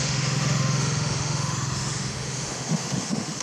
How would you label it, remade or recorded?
remade